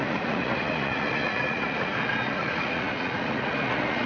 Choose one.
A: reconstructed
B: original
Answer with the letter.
A